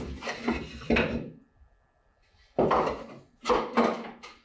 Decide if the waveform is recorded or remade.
recorded